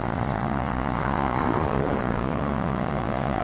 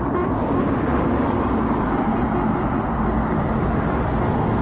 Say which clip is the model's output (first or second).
first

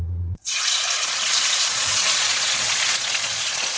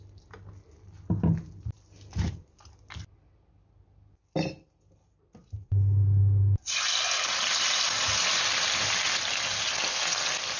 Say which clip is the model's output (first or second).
first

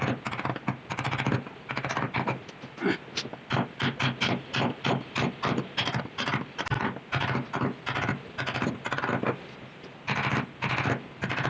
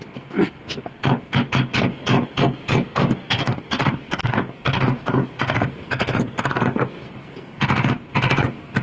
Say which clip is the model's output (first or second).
second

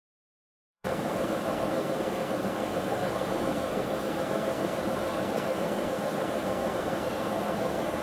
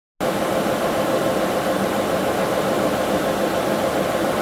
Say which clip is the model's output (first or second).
first